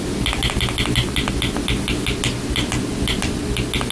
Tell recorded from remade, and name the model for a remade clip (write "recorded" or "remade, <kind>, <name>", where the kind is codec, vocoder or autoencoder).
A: recorded